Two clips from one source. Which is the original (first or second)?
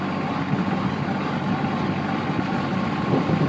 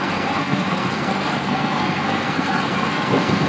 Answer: first